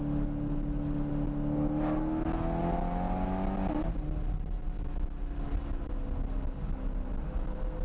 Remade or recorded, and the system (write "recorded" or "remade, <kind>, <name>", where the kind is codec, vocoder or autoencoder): recorded